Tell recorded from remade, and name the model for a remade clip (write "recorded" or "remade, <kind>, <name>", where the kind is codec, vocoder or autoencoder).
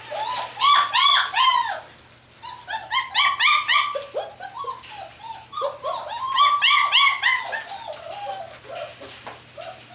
recorded